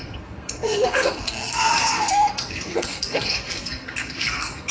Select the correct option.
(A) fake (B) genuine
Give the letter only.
A